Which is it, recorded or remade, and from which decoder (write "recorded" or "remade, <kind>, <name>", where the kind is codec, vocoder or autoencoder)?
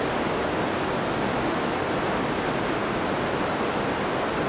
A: recorded